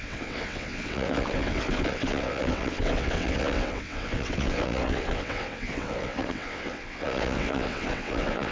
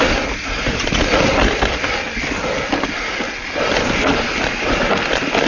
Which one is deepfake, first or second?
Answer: first